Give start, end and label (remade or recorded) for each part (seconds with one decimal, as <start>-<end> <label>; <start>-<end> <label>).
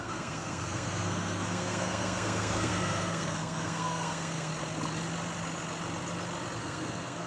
0.0-4.5 remade; 4.5-6.6 recorded; 6.6-7.3 remade